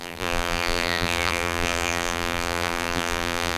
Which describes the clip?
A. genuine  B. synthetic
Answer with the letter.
B